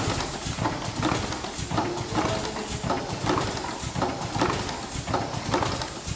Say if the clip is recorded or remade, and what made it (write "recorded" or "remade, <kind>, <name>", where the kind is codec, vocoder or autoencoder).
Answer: recorded